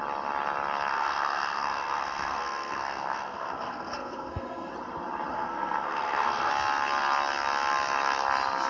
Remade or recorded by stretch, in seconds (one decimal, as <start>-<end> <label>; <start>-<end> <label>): 0.0-0.9 recorded; 0.9-4.7 remade; 4.7-5.3 recorded; 5.3-6.5 remade; 6.5-8.7 recorded